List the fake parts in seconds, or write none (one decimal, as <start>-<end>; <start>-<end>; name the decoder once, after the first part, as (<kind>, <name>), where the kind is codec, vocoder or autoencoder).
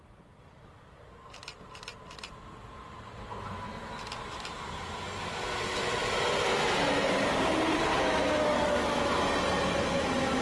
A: 8.4-9.3 (autoencoder, DAC-VAE)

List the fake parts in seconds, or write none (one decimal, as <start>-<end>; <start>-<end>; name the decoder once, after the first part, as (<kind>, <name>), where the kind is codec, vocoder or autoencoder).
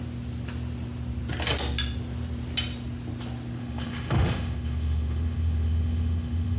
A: 3.6-6.6 (autoencoder, DAC-VAE)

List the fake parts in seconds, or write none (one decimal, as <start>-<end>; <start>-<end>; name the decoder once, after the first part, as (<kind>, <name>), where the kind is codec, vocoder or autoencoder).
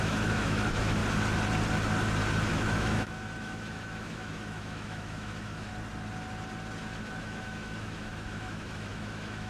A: 0.0-1.0 (autoencoder, DAC-VAE); 2.5-5.7; 7.2-9.5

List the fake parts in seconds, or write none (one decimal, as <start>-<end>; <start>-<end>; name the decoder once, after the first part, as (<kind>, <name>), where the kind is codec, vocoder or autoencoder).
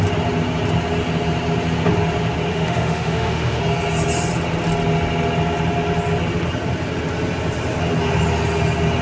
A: 2.5-3.6 (autoencoder, DAC-VAE)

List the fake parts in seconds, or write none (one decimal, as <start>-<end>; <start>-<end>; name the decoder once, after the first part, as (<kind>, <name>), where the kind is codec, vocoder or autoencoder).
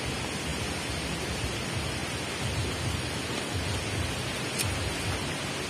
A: none